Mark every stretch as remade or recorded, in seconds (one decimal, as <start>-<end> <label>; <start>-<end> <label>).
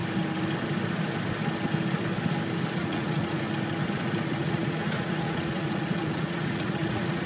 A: 0.0-2.8 recorded; 2.8-3.5 remade; 3.5-4.4 recorded; 4.4-7.3 remade